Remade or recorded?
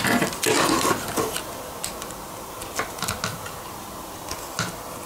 recorded